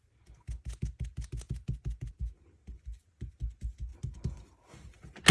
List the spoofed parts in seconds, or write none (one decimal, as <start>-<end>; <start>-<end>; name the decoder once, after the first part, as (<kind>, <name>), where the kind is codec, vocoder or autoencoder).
none